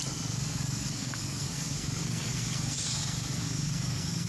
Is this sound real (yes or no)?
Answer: no